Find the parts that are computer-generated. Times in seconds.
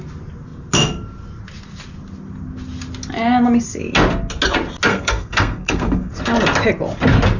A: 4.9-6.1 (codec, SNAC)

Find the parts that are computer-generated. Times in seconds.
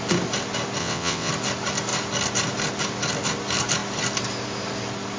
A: 0.8-1.3 (vocoder, WaveNeXt)